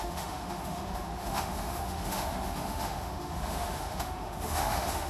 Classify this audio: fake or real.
fake